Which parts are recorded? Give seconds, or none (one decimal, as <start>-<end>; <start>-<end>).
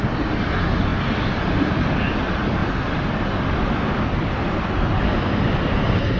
0.0-2.6; 5.0-6.2